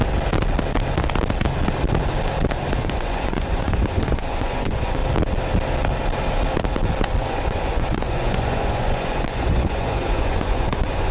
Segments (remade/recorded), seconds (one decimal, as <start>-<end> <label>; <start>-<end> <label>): 0.0-2.8 recorded; 2.8-5.0 remade; 5.0-7.2 recorded; 7.2-11.1 remade